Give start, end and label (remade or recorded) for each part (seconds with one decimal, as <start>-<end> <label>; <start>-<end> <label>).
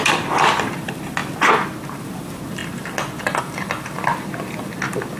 0.0-1.2 remade; 1.2-1.9 recorded; 1.9-5.2 remade